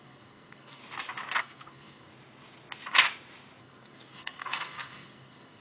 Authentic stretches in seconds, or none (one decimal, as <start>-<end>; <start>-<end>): 0.8-1.4; 2.1-3.6